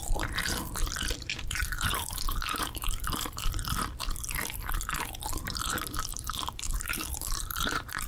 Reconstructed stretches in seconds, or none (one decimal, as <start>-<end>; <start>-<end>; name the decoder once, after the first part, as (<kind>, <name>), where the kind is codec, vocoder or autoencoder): 1.3-3.5 (vocoder, BigVGAN v2); 6.1-8.1